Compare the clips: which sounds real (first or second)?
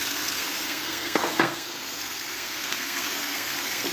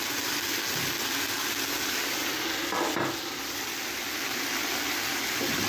second